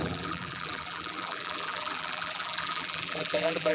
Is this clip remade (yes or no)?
yes